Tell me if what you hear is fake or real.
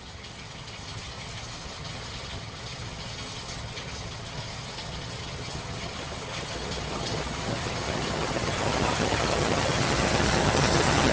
fake